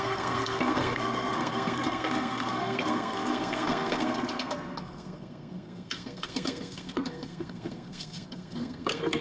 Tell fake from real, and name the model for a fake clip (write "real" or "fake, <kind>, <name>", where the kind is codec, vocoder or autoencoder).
fake, codec, SNAC